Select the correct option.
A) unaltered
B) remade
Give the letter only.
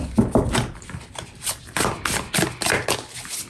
A